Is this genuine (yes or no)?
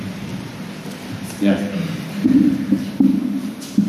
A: no